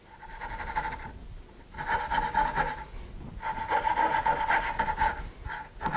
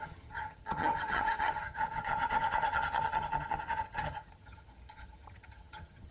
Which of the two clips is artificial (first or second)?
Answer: second